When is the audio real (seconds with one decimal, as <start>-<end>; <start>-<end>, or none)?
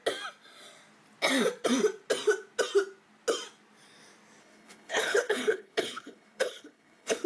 0.0-4.4